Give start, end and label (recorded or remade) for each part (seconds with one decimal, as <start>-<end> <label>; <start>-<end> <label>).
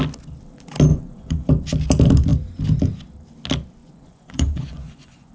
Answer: 0.0-0.9 recorded; 0.9-1.5 remade; 1.5-3.8 recorded; 3.8-5.3 remade